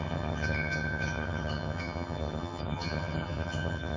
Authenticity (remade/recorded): remade